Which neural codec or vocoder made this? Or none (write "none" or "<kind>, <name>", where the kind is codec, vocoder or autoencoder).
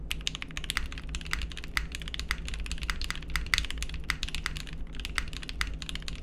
none